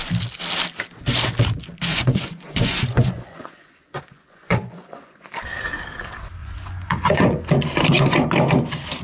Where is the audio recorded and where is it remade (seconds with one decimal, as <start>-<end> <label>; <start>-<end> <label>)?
0.0-1.9 recorded; 1.9-5.4 remade; 5.4-6.4 recorded; 6.4-7.4 remade; 7.4-9.0 recorded